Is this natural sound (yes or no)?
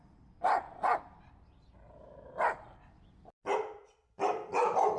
yes